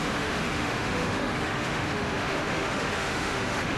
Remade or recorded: remade